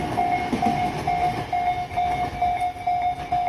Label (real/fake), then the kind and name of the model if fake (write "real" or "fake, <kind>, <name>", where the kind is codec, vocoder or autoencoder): real